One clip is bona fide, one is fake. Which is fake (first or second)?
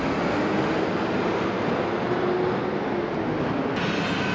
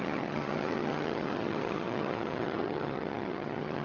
second